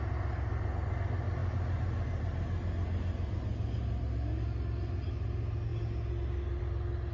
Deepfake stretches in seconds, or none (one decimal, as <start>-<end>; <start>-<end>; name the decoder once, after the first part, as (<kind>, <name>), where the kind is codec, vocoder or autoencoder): none